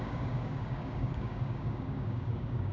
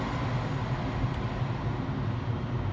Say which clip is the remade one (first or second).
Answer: first